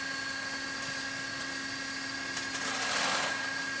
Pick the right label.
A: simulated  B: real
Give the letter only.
B